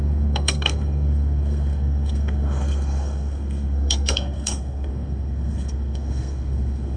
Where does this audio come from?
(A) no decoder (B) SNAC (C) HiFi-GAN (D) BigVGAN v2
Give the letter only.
B